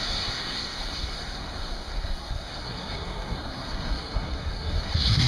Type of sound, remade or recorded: remade